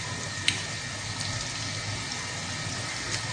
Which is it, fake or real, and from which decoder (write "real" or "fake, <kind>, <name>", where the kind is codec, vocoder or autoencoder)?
real